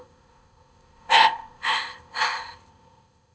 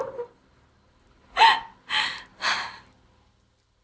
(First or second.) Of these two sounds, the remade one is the first